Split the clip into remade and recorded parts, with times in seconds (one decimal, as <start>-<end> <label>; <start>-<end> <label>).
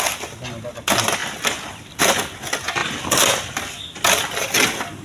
0.0-5.0 recorded